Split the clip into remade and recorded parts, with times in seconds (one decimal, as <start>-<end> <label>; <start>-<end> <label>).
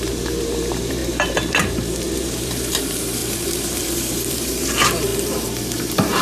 0.0-6.2 remade